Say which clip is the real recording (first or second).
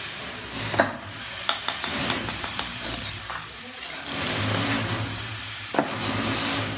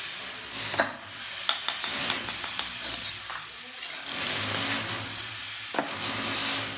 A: second